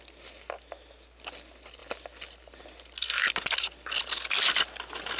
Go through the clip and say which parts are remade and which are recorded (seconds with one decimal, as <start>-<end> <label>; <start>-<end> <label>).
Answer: 0.0-5.2 recorded